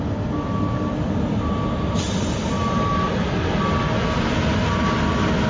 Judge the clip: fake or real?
real